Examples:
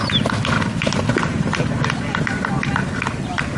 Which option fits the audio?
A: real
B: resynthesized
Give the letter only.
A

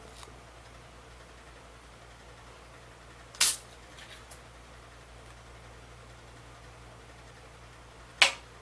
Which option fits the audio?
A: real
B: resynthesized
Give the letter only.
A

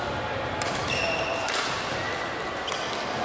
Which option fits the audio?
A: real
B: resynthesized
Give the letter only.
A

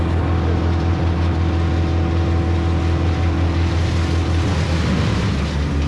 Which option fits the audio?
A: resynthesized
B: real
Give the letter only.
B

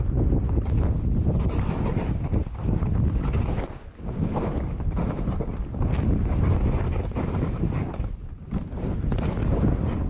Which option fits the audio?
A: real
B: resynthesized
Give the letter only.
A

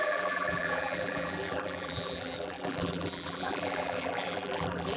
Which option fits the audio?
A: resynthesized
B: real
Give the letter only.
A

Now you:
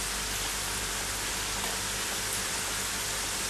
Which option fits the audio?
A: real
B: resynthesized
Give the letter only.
A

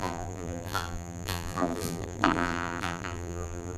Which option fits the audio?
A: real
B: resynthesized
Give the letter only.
B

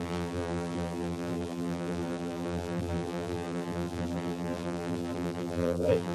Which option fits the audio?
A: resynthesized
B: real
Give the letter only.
A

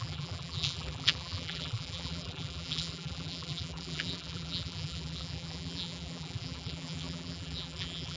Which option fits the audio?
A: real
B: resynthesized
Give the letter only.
B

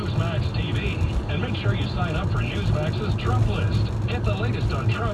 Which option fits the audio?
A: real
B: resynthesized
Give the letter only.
A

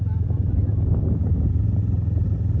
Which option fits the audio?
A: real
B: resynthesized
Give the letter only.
A